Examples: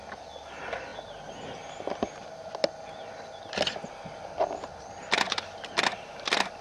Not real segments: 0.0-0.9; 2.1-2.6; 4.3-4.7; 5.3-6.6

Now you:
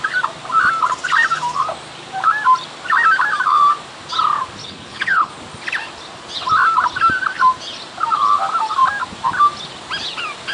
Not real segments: 4.6-5.3